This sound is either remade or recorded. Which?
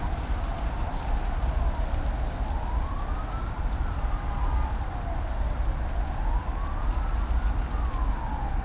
recorded